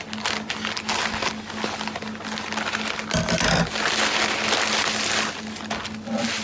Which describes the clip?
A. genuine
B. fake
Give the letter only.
A